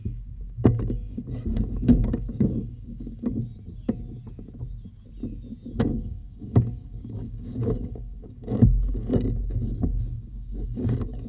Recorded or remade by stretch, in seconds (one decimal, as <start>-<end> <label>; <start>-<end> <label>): 0.0-3.4 remade; 3.4-5.8 recorded; 5.8-11.3 remade